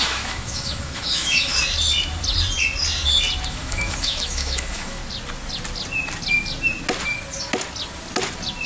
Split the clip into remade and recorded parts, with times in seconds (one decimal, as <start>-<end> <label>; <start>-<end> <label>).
0.0-1.5 remade; 1.5-3.5 recorded; 3.5-5.0 remade; 5.0-8.7 recorded